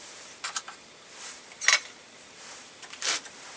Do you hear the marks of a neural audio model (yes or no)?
yes